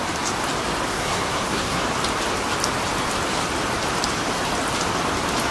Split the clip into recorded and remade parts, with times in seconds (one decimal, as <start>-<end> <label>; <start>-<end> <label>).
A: 0.0-0.9 recorded; 0.9-1.8 remade; 1.8-5.5 recorded